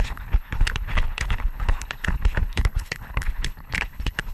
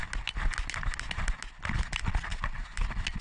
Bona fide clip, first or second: second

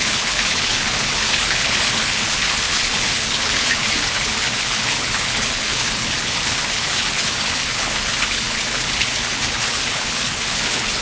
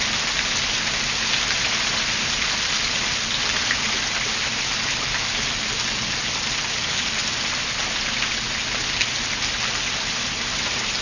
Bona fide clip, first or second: second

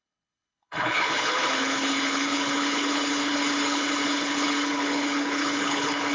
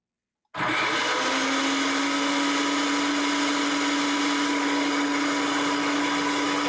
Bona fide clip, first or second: second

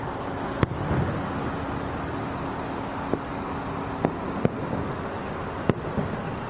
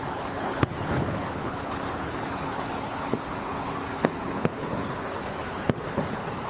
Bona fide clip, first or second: first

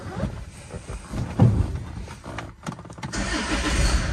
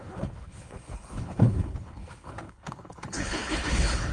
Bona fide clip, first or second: first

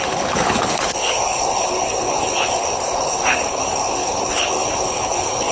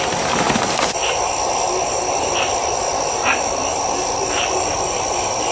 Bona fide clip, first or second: second